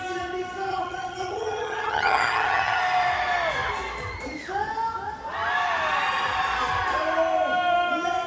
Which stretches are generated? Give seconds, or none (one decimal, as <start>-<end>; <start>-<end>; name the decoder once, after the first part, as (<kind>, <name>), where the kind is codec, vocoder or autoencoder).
0.7-2.8 (vocoder, HiFi-GAN)